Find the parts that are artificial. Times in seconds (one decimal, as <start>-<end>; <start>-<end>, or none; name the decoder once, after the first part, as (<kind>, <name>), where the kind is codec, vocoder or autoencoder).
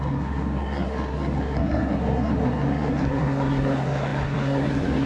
0.0-5.1 (codec, SNAC)